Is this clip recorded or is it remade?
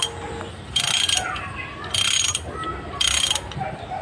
recorded